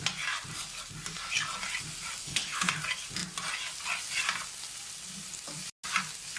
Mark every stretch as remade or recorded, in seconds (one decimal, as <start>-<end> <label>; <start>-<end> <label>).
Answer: 0.0-2.2 recorded; 2.2-2.7 remade; 2.7-6.4 recorded